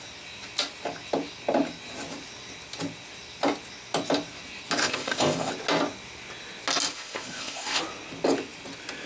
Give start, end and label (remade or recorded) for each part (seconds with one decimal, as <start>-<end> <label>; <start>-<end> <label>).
0.0-4.8 recorded; 4.8-5.5 remade; 5.5-6.9 recorded; 6.9-7.8 remade; 7.8-9.1 recorded